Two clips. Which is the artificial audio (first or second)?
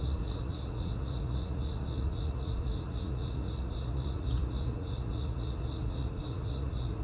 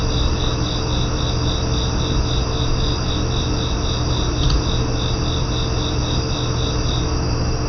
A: first